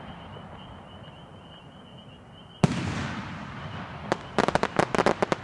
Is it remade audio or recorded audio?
recorded